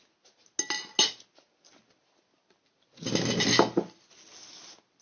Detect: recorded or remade recorded